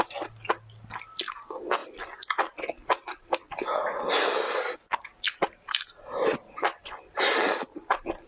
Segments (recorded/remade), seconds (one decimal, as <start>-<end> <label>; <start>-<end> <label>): 0.0-6.5 recorded; 6.5-7.3 remade; 7.3-8.3 recorded